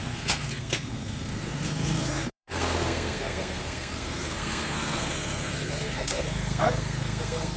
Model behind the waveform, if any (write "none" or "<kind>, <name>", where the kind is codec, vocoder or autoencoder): codec, SNAC